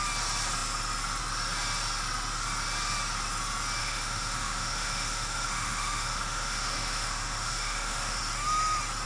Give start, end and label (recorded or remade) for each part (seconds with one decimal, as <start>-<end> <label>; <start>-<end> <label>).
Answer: 0.0-3.8 recorded; 3.8-8.2 remade; 8.2-9.1 recorded